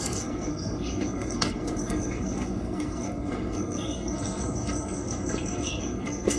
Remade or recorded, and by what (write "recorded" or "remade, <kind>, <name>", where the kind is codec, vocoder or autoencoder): remade, codec, SNAC